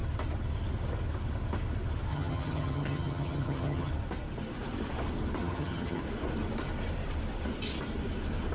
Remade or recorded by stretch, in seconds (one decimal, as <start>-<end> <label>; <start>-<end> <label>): 0.0-2.1 recorded; 2.1-3.9 remade; 3.9-5.4 recorded; 5.4-6.0 remade; 6.0-8.5 recorded